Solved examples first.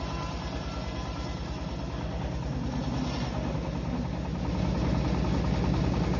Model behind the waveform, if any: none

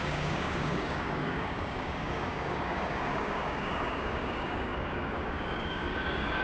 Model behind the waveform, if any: codec, DAC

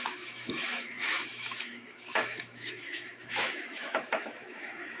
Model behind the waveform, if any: autoencoder, DAC-VAE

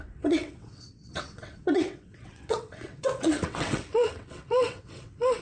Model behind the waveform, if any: vocoder, WaveNeXt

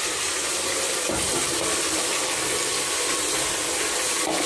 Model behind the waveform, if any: none